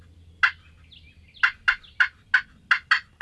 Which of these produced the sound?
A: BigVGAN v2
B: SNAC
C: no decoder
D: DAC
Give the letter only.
C